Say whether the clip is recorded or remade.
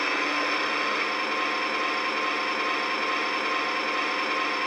recorded